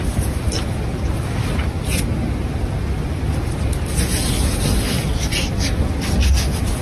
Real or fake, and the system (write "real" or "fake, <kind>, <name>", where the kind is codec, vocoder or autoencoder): real